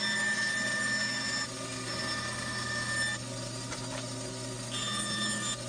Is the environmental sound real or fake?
real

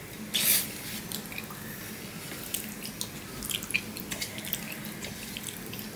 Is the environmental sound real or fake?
real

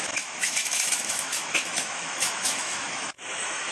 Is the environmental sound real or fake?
fake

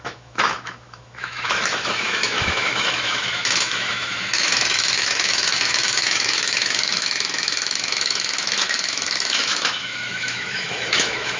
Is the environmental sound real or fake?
fake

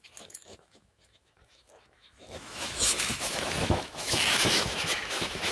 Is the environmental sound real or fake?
fake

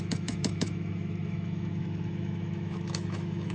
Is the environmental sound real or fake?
fake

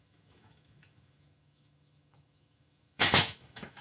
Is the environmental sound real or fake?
fake